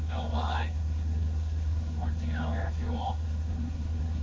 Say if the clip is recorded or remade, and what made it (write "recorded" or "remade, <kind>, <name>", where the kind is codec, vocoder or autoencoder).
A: remade, codec, SNAC